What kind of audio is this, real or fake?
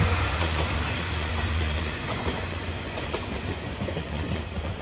fake